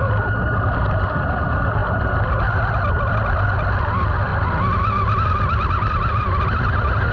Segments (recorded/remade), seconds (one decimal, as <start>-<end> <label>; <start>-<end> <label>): 0.0-7.1 recorded